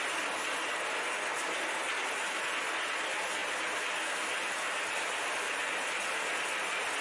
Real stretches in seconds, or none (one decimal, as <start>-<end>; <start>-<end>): 0.0-3.4; 5.9-7.0